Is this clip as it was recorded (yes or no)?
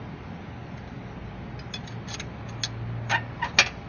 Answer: yes